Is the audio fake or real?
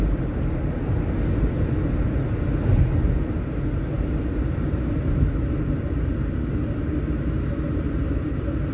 real